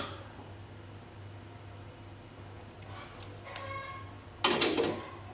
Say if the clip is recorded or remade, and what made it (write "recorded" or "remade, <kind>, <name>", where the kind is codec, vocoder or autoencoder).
recorded